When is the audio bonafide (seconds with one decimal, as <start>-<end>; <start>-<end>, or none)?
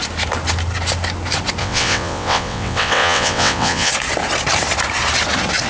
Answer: 0.0-1.6; 3.9-5.7